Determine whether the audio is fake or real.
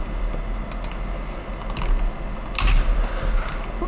real